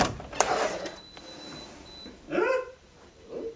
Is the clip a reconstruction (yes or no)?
yes